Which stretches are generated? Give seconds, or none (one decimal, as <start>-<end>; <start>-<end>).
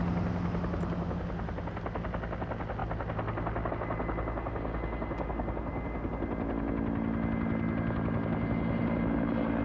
none